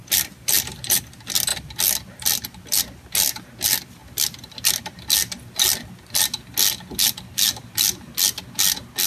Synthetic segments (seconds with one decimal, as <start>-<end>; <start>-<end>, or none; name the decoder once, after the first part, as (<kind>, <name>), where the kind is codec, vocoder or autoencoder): 0.0-1.0 (vocoder, BigVGAN v2); 4.0-4.7